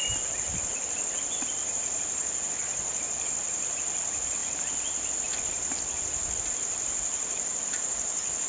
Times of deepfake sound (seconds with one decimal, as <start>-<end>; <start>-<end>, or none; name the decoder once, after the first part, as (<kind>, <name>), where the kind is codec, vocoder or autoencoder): 0.0-4.4 (vocoder, BigVGAN v2); 6.3-8.5